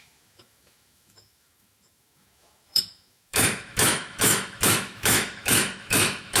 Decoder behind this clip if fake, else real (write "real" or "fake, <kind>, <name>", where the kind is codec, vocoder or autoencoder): fake, autoencoder, DAC-VAE